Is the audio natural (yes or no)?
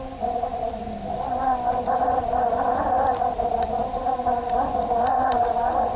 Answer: yes